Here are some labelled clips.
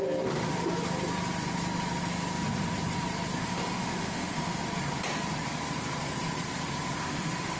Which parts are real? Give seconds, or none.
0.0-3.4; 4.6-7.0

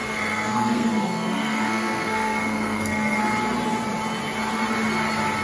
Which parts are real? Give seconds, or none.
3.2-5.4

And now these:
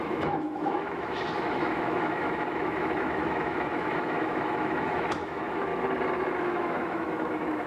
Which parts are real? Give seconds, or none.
5.7-6.4

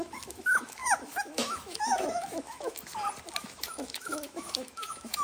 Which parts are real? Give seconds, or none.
2.9-3.4